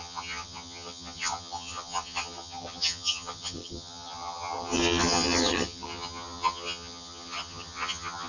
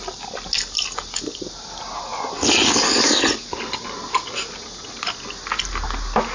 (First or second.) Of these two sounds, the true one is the second